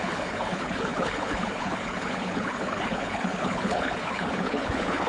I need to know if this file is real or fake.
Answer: fake